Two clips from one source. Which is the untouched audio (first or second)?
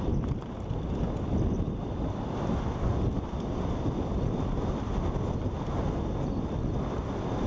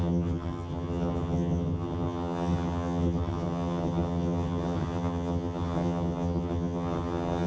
first